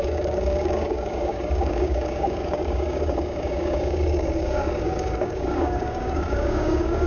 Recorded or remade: remade